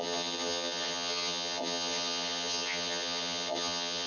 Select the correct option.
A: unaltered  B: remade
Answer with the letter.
B